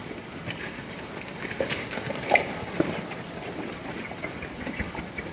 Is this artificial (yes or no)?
no